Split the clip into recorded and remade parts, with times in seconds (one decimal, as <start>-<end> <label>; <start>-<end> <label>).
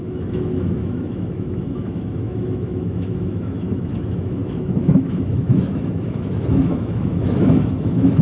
0.0-8.2 remade